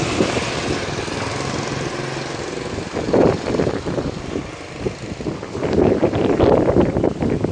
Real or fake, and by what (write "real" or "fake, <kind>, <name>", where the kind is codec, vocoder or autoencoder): real